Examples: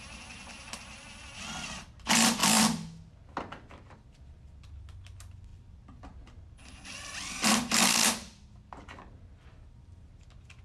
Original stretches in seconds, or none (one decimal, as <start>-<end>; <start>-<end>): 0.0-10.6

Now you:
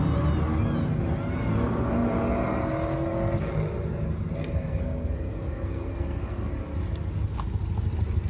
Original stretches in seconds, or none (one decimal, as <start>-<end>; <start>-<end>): 0.0-4.4; 6.5-8.3

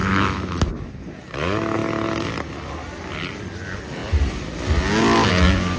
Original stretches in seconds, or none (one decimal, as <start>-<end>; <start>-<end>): 0.6-5.8

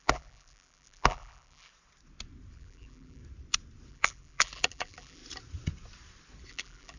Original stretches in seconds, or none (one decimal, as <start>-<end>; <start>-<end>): 1.7-2.5; 3.2-3.9; 5.2-6.5

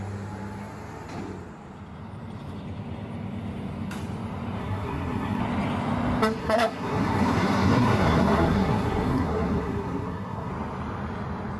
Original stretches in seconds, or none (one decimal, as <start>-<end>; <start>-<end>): 0.0-4.6; 5.4-6.4; 10.5-11.6

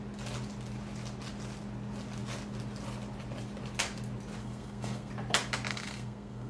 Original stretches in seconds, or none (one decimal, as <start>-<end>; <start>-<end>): 0.0-4.4; 5.1-5.7